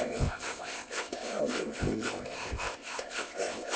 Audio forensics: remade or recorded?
remade